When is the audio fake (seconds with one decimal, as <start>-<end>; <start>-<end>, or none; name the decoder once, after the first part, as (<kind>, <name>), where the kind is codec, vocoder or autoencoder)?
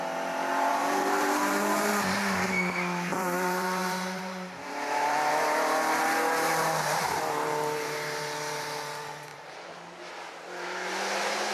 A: 0.7-1.9 (vocoder, BigVGAN v2); 3.1-5.3; 9.3-10.1